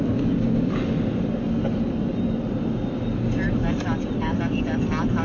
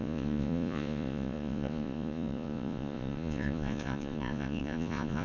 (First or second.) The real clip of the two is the first